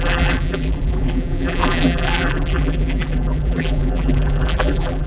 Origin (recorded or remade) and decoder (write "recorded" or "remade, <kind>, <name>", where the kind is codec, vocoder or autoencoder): remade, vocoder, BigVGAN v2